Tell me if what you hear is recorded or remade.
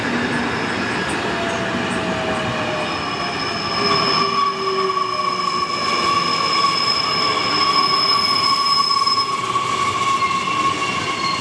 recorded